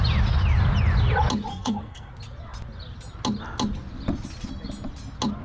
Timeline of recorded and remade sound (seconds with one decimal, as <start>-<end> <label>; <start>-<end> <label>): 0.0-1.5 recorded; 1.5-2.1 remade; 2.1-5.4 recorded